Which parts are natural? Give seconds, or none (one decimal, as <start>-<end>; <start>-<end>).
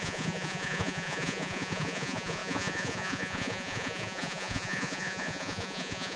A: none